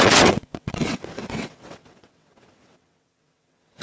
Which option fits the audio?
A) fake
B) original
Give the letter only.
A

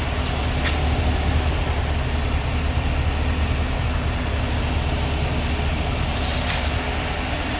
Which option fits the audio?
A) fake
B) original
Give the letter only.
B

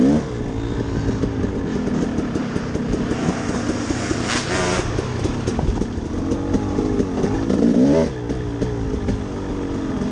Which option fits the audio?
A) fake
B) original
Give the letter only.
B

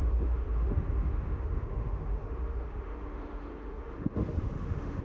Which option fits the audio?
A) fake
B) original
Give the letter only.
A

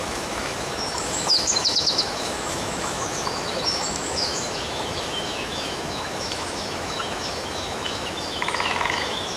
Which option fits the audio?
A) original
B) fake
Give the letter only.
B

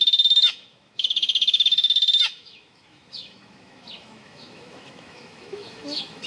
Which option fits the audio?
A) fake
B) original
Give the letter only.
A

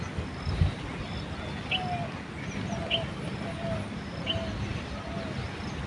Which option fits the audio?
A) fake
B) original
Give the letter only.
B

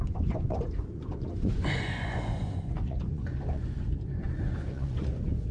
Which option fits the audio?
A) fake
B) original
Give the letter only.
A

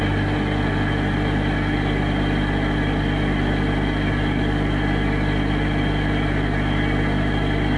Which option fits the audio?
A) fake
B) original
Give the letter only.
B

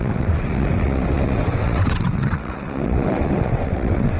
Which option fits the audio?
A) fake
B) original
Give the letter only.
A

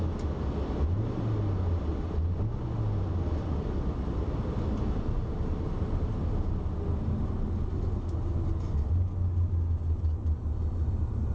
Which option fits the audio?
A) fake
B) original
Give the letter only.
B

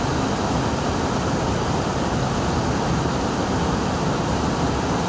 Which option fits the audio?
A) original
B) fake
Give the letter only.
B